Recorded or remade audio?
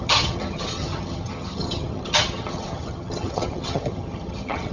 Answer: remade